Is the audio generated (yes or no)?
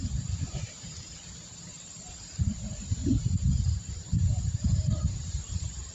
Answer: yes